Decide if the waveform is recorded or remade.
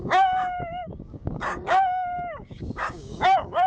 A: remade